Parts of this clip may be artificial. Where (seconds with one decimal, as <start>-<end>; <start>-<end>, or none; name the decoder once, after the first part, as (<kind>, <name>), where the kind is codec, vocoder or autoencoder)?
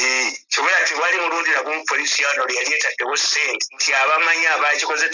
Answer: none